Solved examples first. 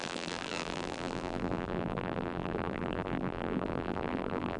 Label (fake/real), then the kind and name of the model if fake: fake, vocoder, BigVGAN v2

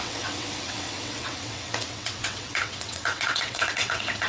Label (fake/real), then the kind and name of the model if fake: fake, vocoder, WaveNeXt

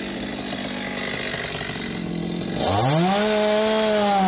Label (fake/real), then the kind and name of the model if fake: real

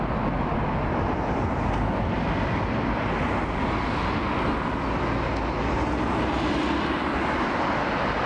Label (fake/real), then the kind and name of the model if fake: real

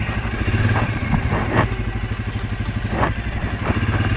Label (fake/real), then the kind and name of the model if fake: real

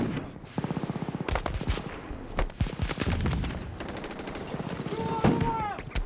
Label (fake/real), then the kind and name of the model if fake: real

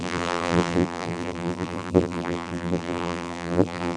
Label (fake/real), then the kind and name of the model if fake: fake, vocoder, BigVGAN v2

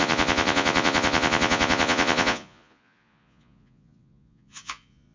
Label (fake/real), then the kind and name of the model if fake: fake, vocoder, Vocos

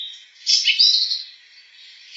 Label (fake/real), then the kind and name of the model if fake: real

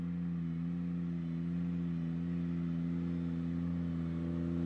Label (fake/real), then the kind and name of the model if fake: real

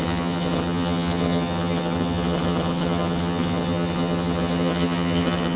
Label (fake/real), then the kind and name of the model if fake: fake, vocoder, HiFi-GAN